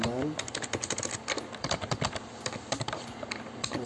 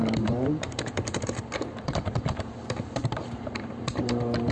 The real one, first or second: first